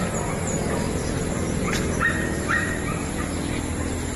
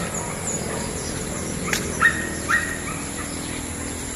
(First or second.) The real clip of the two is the second